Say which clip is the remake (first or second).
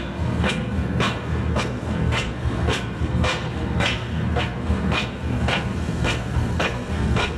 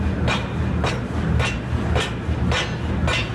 first